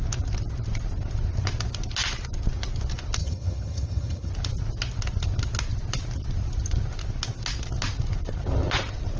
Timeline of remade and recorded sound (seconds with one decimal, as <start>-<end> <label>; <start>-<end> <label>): 0.0-3.2 recorded; 3.2-4.3 remade; 4.3-9.2 recorded